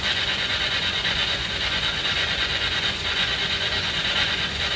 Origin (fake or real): fake